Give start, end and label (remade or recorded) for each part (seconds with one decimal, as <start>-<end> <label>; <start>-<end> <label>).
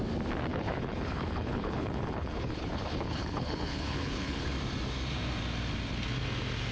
0.0-0.5 recorded; 0.5-4.5 remade; 4.5-6.7 recorded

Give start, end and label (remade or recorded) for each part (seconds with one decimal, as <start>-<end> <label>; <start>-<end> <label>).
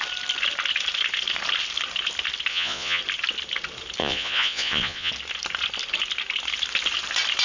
0.0-2.5 recorded; 2.5-3.0 remade; 3.0-4.0 recorded; 4.0-5.1 remade; 5.1-7.4 recorded